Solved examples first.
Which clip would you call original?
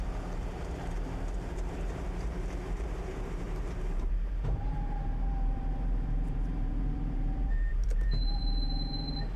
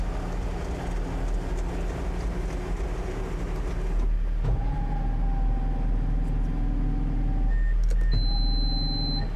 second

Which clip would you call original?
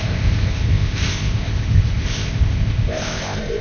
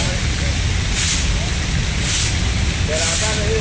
second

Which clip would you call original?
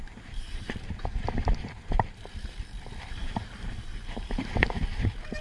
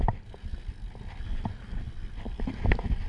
second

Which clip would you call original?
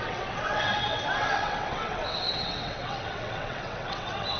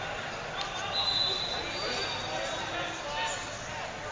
second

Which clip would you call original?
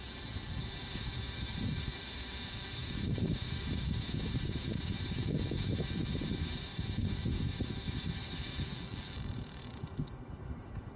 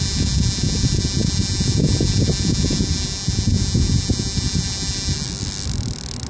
second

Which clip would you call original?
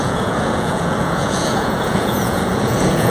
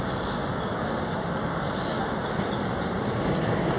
second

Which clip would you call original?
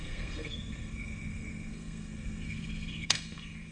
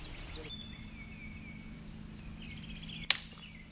second